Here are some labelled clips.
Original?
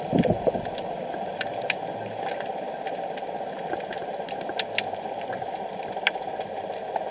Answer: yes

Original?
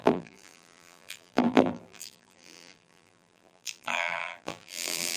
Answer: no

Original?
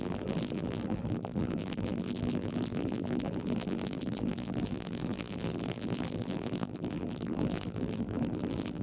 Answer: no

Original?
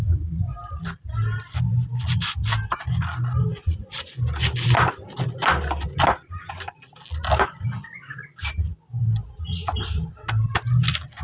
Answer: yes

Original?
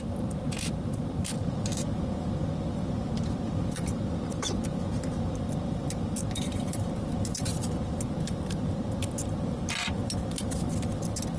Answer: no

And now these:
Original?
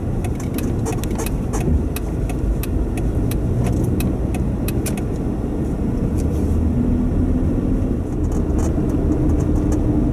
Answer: yes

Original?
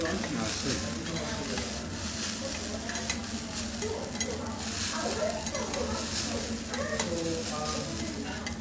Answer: yes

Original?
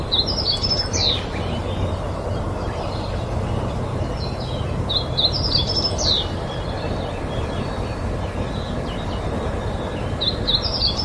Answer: yes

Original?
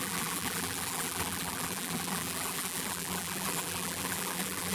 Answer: no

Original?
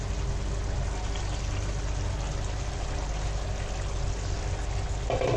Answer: yes